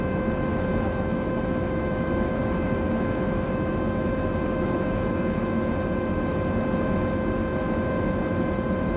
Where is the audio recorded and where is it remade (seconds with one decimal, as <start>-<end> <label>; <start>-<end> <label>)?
0.0-0.5 recorded; 0.5-5.7 remade; 5.7-9.0 recorded